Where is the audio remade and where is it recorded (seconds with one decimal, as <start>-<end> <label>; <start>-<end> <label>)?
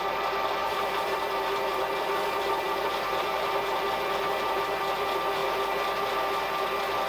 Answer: 0.0-0.6 recorded; 0.6-4.8 remade; 4.8-7.1 recorded